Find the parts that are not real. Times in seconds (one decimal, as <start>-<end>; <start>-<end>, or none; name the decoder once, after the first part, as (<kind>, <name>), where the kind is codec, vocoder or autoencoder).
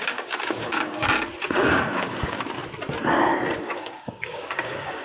0.0-1.0 (codec, DAC); 1.7-2.6; 3.6-5.0